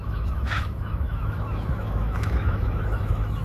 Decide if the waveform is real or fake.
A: fake